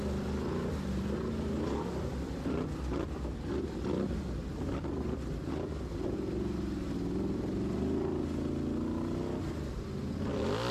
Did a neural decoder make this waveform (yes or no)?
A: no